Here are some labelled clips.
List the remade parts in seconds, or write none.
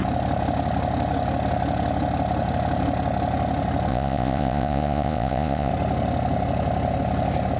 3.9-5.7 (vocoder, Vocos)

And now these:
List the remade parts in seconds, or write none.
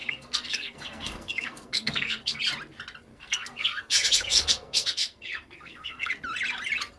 0.0-2.4 (codec, SNAC); 3.1-6.1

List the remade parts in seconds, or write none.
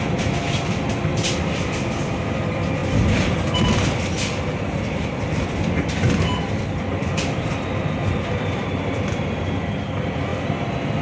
none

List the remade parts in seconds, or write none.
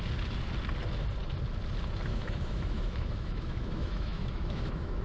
2.1-5.0 (autoencoder, DAC-VAE)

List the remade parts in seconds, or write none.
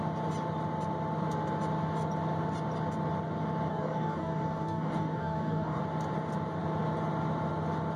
3.7-5.8 (codec, DAC)